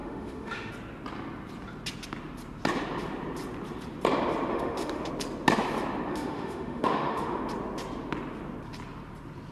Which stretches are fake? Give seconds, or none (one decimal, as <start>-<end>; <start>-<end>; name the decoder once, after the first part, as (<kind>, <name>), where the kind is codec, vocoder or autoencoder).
0.0-0.7 (autoencoder, DAC-VAE); 4.5-5.1; 6.1-7.4